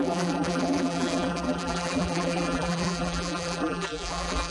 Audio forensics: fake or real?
fake